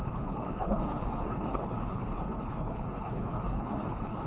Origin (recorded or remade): remade